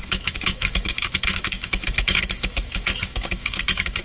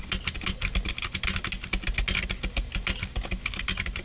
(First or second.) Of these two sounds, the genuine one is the second